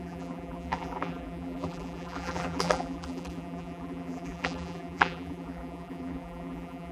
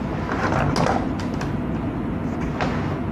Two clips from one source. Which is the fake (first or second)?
first